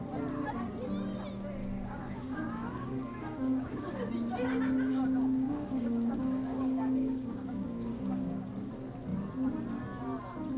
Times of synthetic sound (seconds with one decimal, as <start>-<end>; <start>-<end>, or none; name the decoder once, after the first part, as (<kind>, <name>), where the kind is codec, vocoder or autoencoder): 1.6-4.1 (codec, DAC); 4.9-8.5